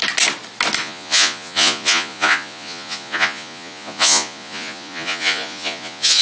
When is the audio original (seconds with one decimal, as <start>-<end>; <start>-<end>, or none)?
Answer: 0.0-0.8

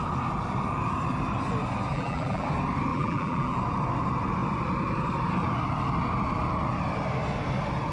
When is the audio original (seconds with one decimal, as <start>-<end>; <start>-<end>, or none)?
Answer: 0.0-1.9; 2.5-2.9; 3.6-7.9

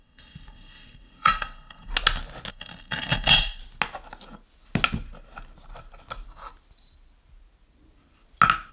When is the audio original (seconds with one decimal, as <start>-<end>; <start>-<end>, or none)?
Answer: 1.9-2.5; 3.6-8.7